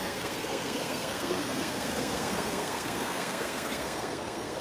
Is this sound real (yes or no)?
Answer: no